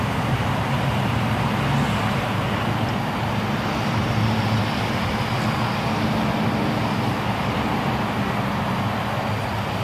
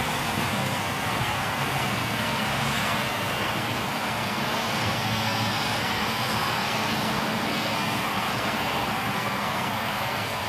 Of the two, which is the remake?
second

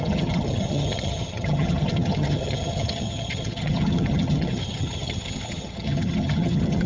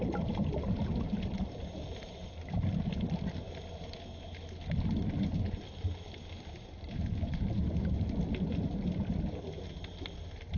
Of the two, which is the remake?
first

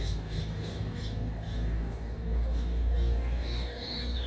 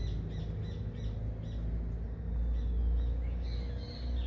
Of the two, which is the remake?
first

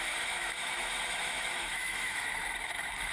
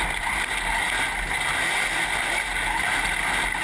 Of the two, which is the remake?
first